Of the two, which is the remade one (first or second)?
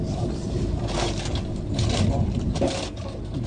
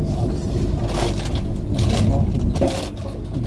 first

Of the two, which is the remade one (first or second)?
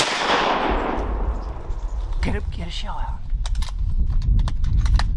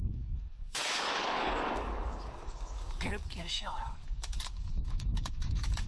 second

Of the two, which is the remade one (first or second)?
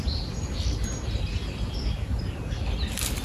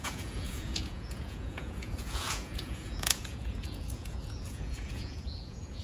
second